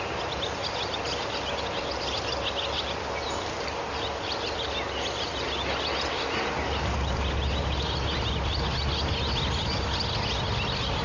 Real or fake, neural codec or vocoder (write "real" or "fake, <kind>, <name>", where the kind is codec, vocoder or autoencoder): real